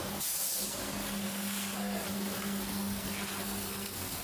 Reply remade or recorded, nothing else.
remade